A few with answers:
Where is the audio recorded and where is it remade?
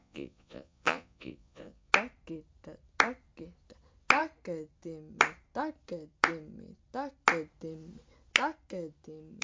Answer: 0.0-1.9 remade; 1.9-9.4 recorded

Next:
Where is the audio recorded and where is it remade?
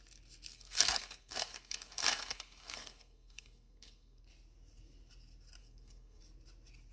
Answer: 0.0-0.5 recorded; 0.5-4.2 remade; 4.2-5.6 recorded; 5.6-6.2 remade; 6.2-6.9 recorded